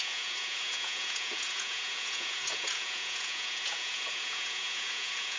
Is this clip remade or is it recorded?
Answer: remade